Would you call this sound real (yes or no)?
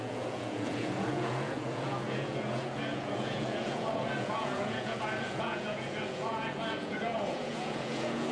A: no